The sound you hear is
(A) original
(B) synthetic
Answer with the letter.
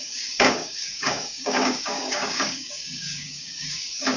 B